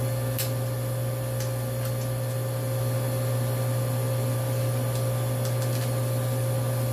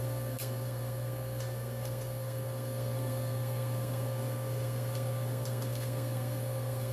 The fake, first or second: second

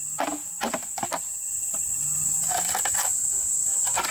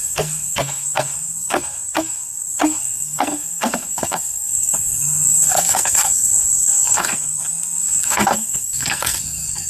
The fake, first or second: second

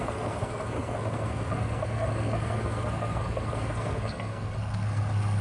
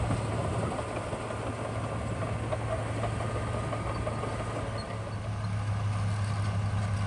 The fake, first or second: first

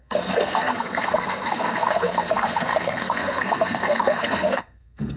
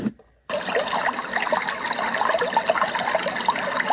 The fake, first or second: first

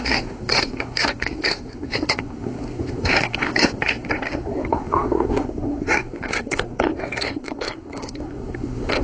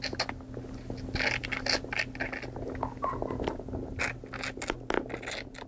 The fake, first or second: first